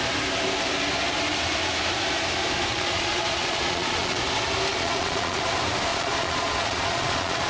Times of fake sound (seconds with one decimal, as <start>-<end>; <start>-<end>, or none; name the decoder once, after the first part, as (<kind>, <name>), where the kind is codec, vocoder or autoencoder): 2.7-4.2 (vocoder, Vocos); 4.7-5.4; 5.9-7.5